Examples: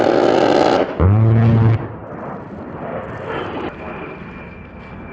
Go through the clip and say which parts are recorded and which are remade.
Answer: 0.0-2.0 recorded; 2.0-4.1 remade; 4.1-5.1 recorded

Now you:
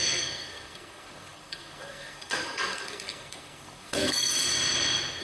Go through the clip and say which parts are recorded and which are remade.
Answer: 0.0-4.3 remade; 4.3-5.2 recorded

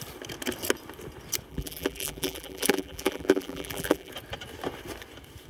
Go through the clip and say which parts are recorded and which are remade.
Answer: 0.0-1.5 recorded; 1.5-4.1 remade; 4.1-5.5 recorded

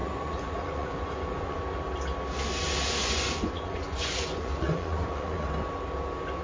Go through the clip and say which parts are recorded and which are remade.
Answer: 0.0-1.6 remade; 1.6-3.0 recorded; 3.0-5.5 remade; 5.5-6.4 recorded

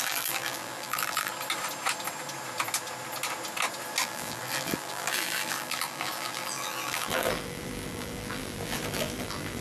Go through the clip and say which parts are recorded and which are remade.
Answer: 0.0-1.3 remade; 1.3-4.0 recorded; 4.0-9.6 remade

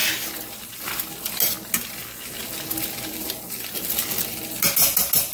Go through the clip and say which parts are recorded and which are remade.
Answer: 0.0-5.3 recorded

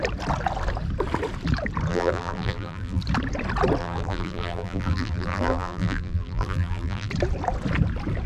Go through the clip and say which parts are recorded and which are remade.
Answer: 0.0-1.9 recorded; 1.9-3.0 remade; 3.0-3.8 recorded; 3.8-7.1 remade; 7.1-8.3 recorded

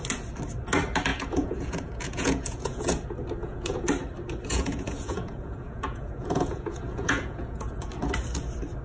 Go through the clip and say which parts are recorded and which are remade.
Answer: 0.0-1.1 recorded; 1.1-2.9 remade; 2.9-3.4 recorded; 3.4-3.9 remade; 3.9-4.5 recorded; 4.5-7.9 remade; 7.9-8.8 recorded